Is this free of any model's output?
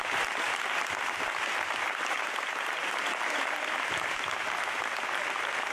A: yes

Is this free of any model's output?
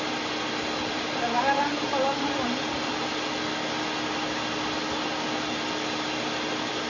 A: yes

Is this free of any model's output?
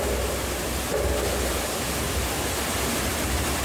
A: yes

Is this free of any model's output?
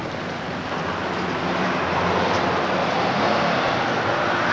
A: yes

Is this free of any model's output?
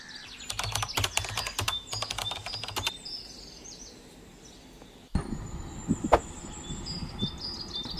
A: yes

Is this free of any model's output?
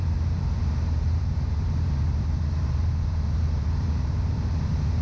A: no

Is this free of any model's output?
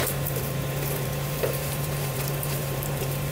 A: no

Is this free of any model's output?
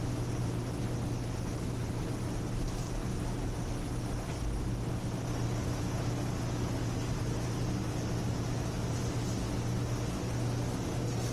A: yes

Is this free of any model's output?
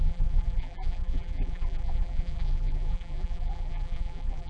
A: no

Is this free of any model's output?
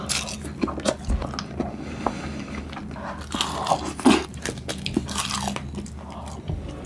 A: yes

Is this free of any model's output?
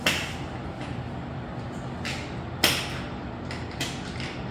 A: yes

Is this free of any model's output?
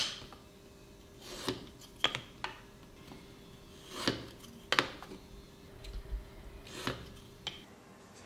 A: yes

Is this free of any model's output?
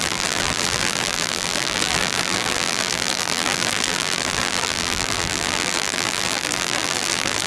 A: no